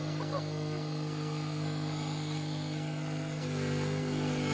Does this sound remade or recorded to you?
remade